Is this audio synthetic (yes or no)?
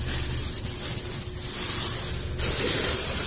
no